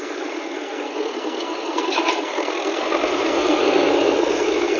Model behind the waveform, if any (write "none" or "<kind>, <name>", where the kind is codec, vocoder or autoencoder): codec, SNAC